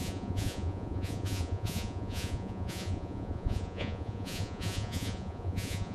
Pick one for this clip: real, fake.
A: fake